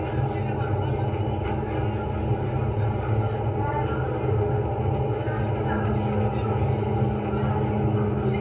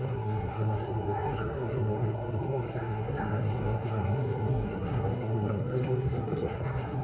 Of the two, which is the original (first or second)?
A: first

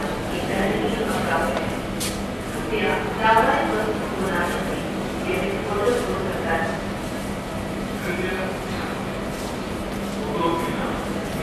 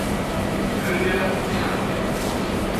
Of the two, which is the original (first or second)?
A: first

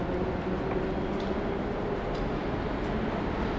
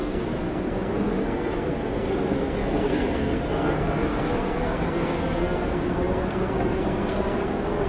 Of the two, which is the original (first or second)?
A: first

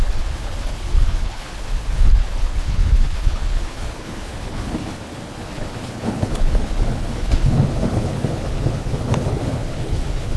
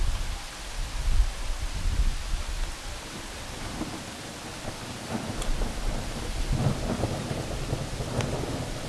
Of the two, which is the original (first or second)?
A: second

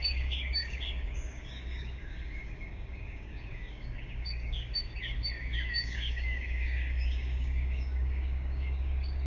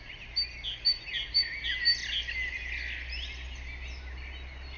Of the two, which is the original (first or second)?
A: second